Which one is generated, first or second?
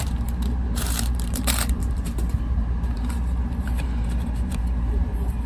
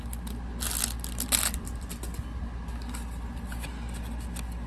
first